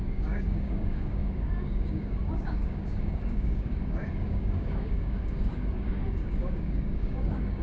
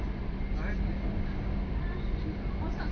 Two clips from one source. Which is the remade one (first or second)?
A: first